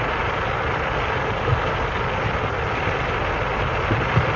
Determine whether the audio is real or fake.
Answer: real